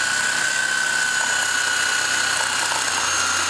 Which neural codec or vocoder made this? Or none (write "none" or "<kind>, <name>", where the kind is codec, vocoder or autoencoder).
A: none